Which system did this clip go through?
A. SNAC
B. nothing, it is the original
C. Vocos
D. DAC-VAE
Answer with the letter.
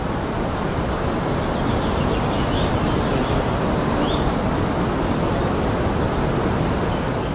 B